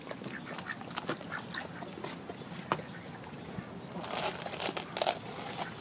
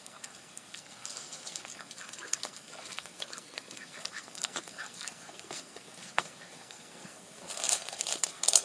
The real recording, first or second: first